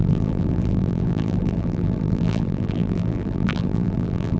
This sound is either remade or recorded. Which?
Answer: remade